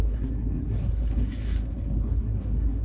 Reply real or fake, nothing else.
fake